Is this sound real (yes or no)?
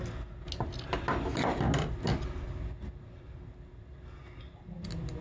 yes